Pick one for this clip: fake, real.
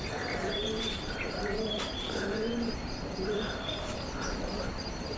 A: fake